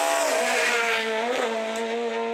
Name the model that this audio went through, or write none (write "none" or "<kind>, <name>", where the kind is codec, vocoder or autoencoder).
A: none